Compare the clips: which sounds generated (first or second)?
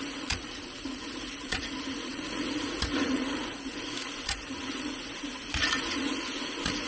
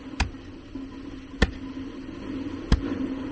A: first